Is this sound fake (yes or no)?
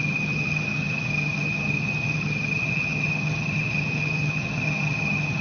yes